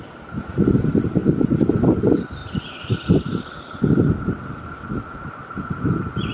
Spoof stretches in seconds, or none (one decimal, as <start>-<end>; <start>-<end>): none